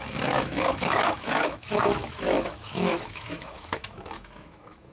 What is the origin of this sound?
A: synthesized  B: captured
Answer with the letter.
A